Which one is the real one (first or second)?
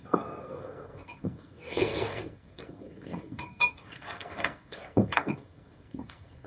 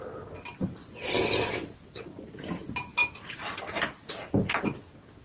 second